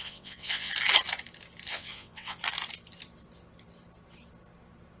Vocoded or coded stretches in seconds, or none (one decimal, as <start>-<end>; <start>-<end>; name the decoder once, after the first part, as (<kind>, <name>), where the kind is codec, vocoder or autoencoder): 0.0-0.7 (vocoder, WaveNeXt); 1.7-2.4